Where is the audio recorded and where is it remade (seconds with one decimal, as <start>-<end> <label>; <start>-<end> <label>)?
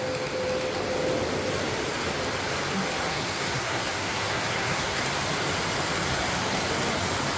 0.0-3.1 recorded; 3.1-5.0 remade; 5.0-7.4 recorded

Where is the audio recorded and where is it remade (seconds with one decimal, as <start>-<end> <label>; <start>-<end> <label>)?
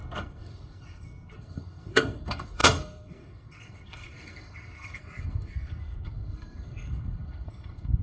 0.0-8.0 remade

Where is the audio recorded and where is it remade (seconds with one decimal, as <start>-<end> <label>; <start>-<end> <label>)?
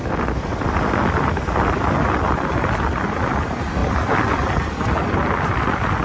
0.0-6.0 recorded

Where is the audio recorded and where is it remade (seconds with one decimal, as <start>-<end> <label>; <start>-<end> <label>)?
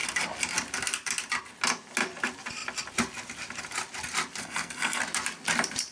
0.0-4.4 recorded; 4.4-5.0 remade; 5.0-5.9 recorded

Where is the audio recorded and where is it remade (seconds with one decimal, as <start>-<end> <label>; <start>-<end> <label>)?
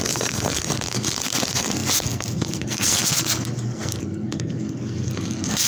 0.0-5.7 remade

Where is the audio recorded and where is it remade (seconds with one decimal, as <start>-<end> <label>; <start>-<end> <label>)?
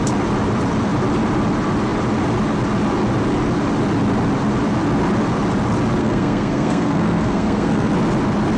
0.0-6.0 recorded; 6.0-7.9 remade; 7.9-8.6 recorded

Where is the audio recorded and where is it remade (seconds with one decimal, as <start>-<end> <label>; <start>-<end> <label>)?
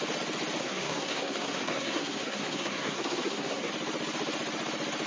0.0-0.6 recorded; 0.6-3.7 remade; 3.7-5.1 recorded